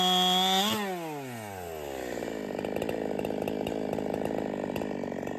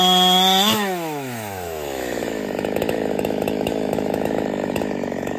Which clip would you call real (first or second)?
first